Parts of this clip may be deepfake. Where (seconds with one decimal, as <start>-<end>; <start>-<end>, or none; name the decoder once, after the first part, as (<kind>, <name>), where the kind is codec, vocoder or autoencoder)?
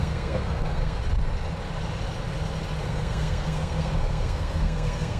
0.0-1.0 (codec, SNAC); 2.8-5.2